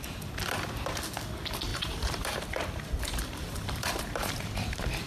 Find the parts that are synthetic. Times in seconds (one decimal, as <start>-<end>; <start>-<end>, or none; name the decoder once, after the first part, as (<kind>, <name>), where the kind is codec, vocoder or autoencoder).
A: 1.7-5.1 (vocoder, BigVGAN v2)